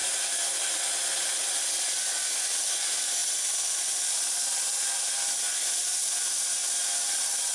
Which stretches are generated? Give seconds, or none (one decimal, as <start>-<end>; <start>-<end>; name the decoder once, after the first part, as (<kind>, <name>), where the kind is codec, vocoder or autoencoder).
none